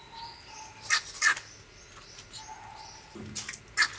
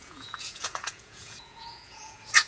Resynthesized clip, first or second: second